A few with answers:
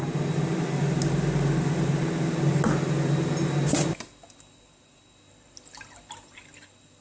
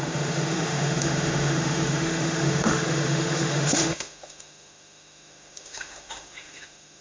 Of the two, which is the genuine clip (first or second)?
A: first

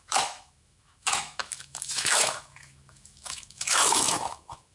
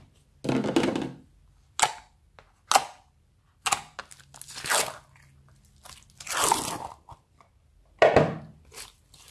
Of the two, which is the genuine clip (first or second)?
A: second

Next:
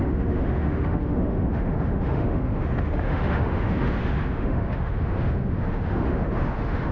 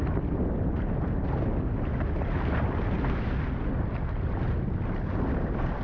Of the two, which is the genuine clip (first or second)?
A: second